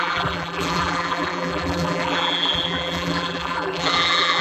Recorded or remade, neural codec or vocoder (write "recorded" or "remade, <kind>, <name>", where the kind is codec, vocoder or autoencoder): remade, vocoder, BigVGAN v2